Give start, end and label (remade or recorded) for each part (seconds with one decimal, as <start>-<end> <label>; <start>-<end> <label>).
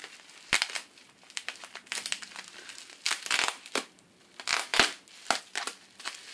0.0-6.3 recorded